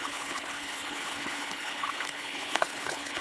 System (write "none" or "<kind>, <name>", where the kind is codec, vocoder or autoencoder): codec, HILCodec